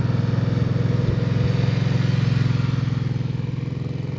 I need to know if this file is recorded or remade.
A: recorded